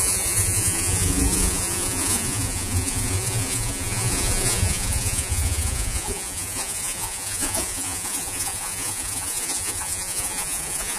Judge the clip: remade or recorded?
remade